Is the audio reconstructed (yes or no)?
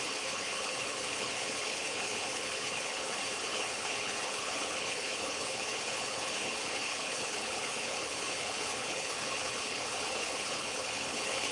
yes